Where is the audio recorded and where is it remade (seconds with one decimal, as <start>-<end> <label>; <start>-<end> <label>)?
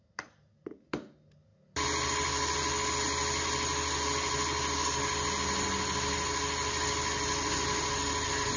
0.0-8.6 recorded